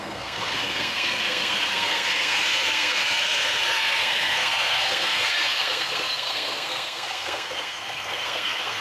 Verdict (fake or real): fake